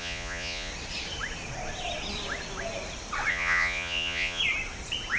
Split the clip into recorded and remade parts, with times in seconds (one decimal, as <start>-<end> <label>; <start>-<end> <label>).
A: 0.0-0.7 remade; 0.7-3.3 recorded; 3.3-4.4 remade; 4.4-5.2 recorded